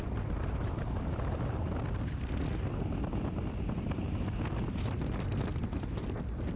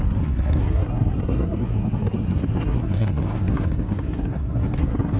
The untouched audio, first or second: first